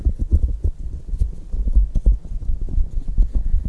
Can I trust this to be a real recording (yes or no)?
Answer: yes